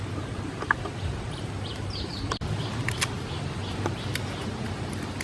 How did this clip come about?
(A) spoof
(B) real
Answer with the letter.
B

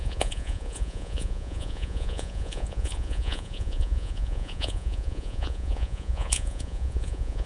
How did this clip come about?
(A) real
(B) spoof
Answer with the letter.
B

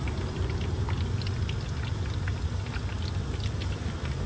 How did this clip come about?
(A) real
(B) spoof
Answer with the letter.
A